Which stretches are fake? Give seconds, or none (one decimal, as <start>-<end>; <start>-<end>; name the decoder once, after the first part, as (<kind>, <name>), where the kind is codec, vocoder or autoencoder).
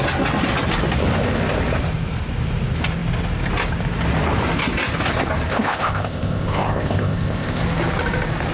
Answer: 5.5-7.6 (codec, ZipCodec)